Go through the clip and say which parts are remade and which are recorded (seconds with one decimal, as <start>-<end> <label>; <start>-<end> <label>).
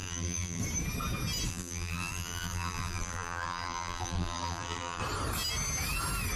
0.0-0.6 remade; 0.6-1.5 recorded; 1.5-5.0 remade; 5.0-6.4 recorded